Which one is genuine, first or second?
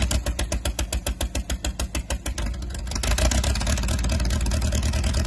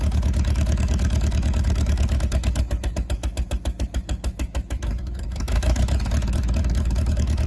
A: first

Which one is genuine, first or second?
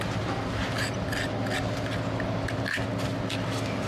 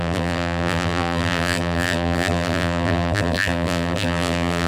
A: first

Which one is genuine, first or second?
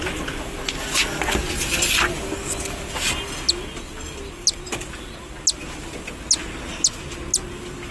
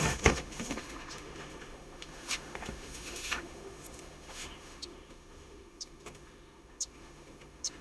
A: first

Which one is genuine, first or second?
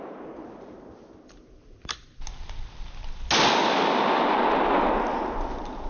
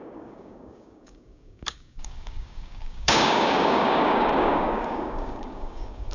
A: first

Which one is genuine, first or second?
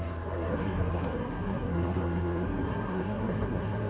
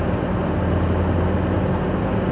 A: second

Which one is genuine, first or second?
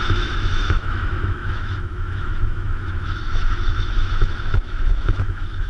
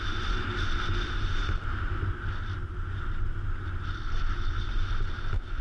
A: second